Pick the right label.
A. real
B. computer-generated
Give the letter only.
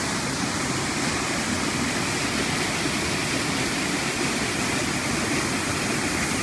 A